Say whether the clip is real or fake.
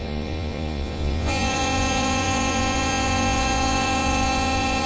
fake